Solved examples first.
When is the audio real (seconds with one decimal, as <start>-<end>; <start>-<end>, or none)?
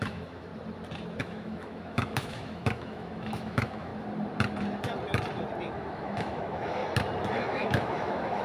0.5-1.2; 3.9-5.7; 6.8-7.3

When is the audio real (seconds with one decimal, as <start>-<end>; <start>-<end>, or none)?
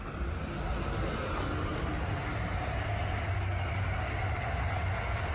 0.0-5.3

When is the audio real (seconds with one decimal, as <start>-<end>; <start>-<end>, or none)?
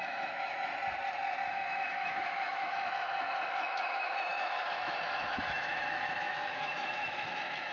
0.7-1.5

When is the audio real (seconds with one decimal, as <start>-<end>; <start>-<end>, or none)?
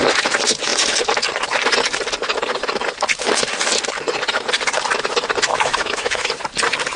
0.0-5.5; 6.3-7.0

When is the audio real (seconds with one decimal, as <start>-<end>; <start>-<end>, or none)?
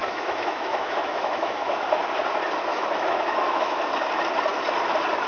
2.0-2.7; 3.8-5.3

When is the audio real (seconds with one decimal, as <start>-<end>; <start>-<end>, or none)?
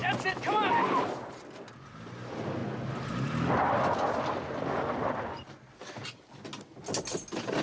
0.0-7.6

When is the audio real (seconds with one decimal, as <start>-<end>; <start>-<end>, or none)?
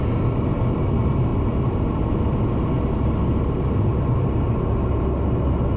0.0-5.8